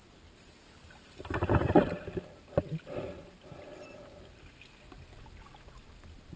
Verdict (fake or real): real